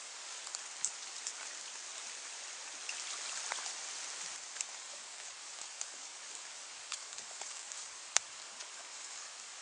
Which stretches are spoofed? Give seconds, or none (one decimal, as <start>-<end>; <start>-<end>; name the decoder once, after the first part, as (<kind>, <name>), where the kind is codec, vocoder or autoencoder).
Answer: 0.0-0.4 (codec, DAC); 4.8-9.6